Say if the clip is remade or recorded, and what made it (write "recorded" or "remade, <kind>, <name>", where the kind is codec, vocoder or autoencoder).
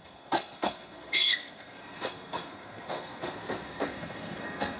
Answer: remade, codec, SNAC